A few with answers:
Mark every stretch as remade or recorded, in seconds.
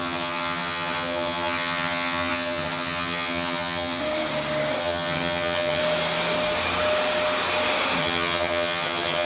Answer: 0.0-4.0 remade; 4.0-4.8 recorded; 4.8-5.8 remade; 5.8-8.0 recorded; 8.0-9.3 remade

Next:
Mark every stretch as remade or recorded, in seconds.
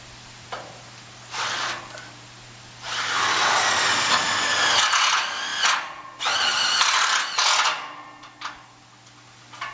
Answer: 0.0-9.7 recorded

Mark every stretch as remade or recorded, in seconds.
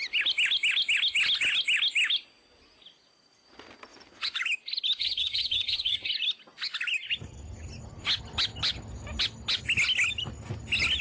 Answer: 0.0-5.0 recorded; 5.0-6.1 remade; 6.1-11.0 recorded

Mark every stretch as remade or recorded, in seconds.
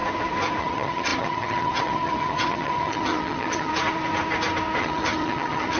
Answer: 0.0-0.6 recorded; 0.6-3.7 remade; 3.7-4.8 recorded; 4.8-5.8 remade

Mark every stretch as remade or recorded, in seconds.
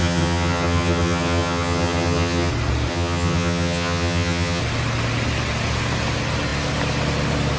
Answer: 0.0-2.5 remade; 2.5-2.9 recorded; 2.9-4.6 remade; 4.6-7.6 recorded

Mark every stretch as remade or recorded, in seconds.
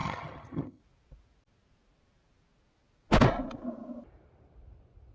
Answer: 0.0-0.8 remade; 0.8-5.1 recorded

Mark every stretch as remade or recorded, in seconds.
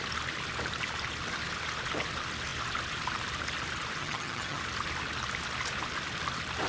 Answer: 0.0-4.0 recorded; 4.0-4.6 remade; 4.6-6.7 recorded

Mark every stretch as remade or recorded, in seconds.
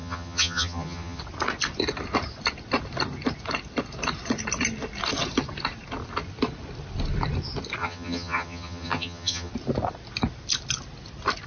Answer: 0.0-1.2 remade; 1.2-7.8 recorded; 7.8-9.5 remade; 9.5-11.5 recorded